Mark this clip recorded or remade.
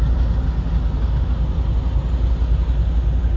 recorded